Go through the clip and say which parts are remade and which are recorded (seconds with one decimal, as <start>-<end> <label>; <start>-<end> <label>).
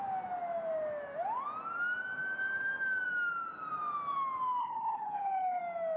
0.0-4.6 recorded; 4.6-5.6 remade; 5.6-6.0 recorded